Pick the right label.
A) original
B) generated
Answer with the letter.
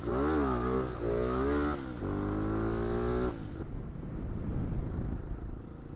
A